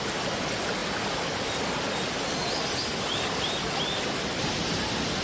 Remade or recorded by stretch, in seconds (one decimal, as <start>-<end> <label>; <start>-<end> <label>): 0.0-5.2 recorded

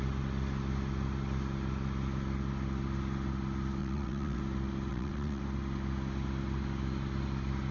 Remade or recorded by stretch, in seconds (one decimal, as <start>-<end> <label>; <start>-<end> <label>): 0.0-3.8 recorded; 3.8-4.4 remade; 4.4-4.9 recorded; 4.9-5.4 remade; 5.4-7.7 recorded

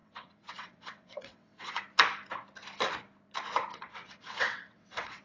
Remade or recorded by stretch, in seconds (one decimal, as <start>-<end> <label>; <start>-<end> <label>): 0.0-1.8 remade; 1.8-3.7 recorded; 3.7-5.2 remade

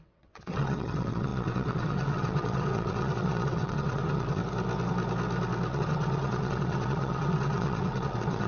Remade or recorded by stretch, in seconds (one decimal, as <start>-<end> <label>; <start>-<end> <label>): 0.0-4.4 remade; 4.4-5.7 recorded; 5.7-8.5 remade

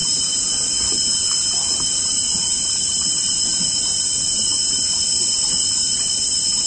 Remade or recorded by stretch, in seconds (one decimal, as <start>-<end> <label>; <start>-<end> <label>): 0.0-6.7 recorded

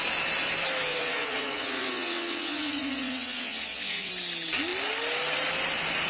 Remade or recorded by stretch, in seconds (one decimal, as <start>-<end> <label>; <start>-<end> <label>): 0.0-0.9 recorded; 0.9-4.1 remade; 4.1-6.1 recorded

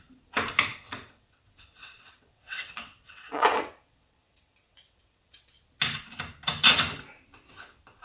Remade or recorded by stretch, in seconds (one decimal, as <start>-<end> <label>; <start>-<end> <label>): 0.0-0.7 recorded; 0.7-5.5 remade; 5.5-8.0 recorded